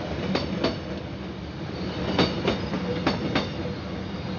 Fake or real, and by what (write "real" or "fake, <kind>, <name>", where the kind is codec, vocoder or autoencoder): real